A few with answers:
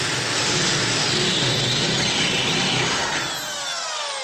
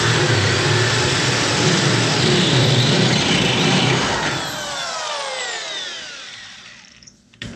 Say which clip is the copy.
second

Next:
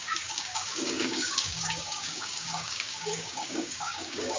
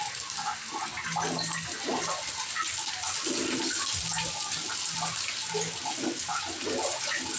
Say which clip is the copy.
first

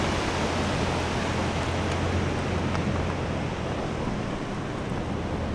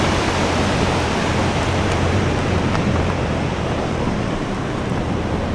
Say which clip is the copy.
second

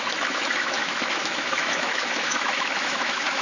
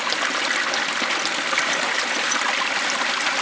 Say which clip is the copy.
first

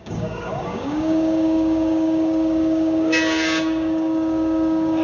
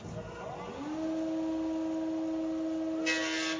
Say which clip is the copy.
first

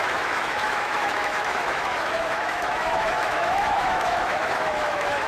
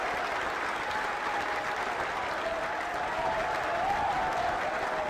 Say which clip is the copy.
first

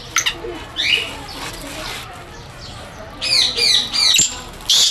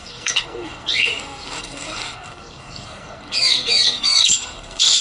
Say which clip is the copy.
second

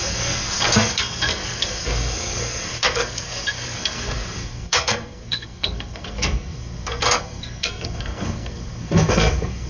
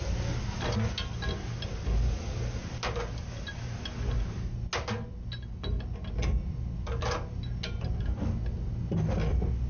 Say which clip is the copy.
first